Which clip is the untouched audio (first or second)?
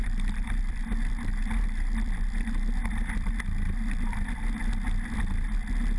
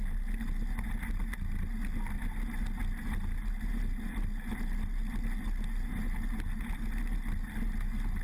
second